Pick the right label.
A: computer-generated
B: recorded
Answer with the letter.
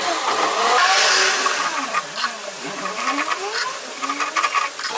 B